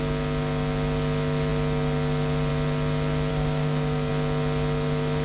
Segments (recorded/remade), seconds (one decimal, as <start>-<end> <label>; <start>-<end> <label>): 0.0-3.3 recorded; 3.3-4.1 remade; 4.1-5.2 recorded